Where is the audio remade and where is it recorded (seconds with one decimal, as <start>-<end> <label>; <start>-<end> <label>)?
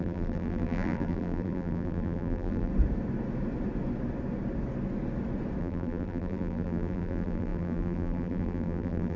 0.0-2.7 remade; 2.7-5.6 recorded; 5.6-9.2 remade